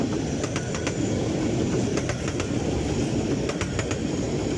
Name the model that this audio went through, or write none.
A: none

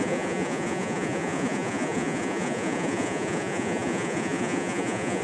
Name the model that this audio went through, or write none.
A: vocoder, Vocos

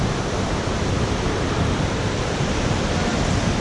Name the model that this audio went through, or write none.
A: none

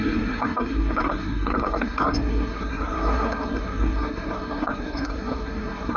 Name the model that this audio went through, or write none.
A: codec, SNAC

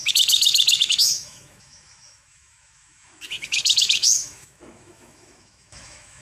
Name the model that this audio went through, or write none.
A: autoencoder, DAC-VAE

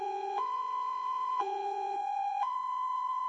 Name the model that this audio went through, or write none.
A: vocoder, Vocos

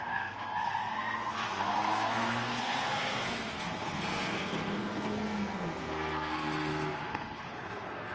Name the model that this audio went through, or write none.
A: codec, SNAC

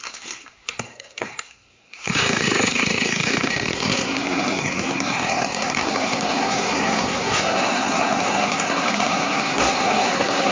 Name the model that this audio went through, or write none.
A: codec, SNAC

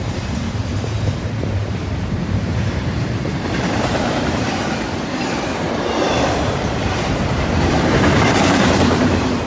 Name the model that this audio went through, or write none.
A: vocoder, BigVGAN v2